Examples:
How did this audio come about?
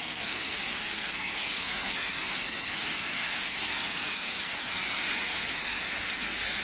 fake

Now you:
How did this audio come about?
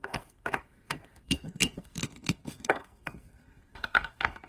fake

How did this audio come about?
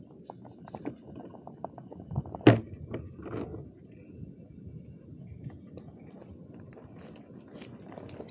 real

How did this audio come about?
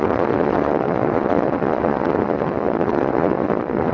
fake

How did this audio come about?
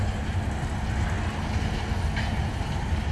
real